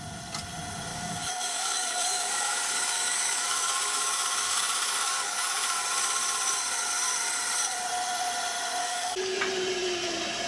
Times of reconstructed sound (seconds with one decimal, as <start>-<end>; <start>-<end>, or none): 0.9-5.8; 8.8-9.4